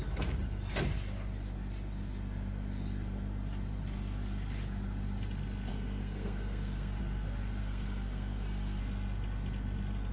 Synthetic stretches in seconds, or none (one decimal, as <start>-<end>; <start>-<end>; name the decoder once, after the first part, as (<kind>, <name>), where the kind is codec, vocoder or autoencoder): 5.7-7.0 (codec, SNAC); 7.6-8.8